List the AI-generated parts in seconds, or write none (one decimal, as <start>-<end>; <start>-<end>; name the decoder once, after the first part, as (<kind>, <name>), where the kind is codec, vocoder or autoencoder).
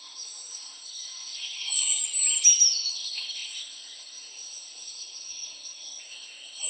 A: 0.0-2.0 (codec, SNAC); 2.9-6.7